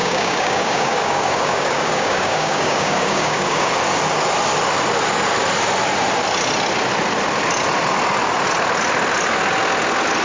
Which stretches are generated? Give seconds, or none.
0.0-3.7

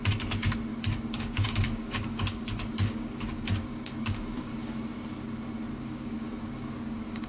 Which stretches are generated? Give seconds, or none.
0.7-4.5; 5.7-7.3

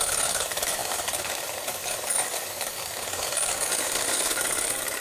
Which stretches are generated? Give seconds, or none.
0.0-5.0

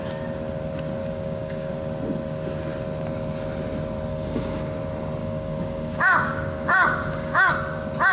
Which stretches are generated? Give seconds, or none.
1.0-1.7; 4.1-4.6; 5.2-7.5

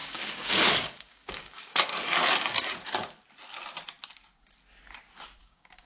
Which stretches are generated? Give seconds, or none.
0.0-1.9; 5.4-5.9

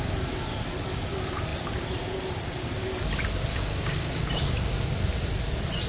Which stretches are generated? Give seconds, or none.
3.5-4.2